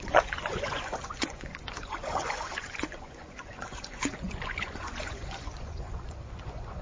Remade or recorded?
remade